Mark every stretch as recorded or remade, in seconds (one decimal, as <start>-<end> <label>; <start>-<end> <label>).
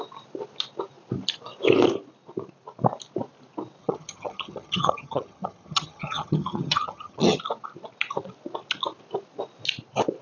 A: 0.0-3.8 recorded; 3.8-7.4 remade; 7.4-10.2 recorded